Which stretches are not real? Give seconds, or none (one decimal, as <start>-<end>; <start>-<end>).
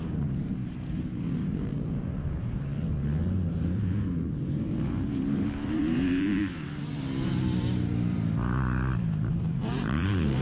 0.0-2.7; 3.5-10.4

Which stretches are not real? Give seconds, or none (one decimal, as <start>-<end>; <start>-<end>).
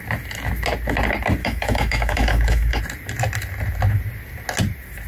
1.4-2.8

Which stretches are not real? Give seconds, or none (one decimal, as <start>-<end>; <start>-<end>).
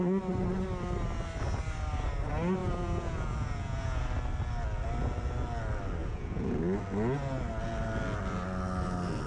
2.6-4.0; 6.0-6.6